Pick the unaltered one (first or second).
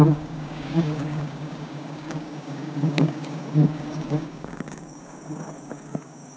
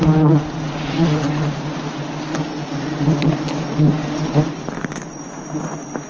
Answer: second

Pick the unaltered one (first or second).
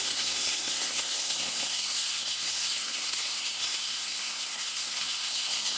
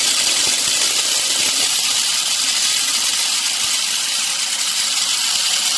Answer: second